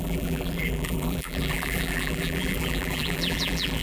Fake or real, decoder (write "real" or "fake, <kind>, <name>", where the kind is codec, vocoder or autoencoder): fake, vocoder, BigVGAN v2